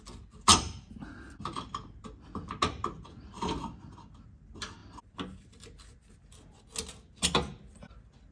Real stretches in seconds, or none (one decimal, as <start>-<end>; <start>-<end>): 0.0-8.3